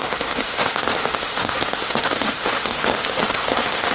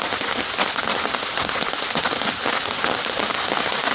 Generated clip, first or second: first